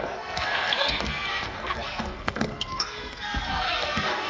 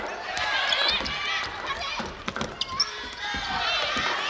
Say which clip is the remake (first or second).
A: first